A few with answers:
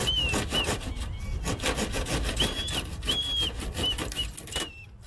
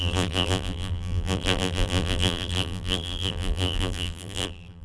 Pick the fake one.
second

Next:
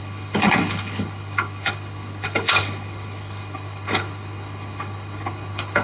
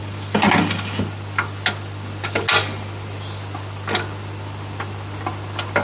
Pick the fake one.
first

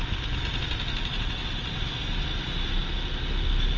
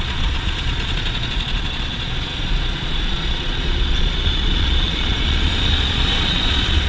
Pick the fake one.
second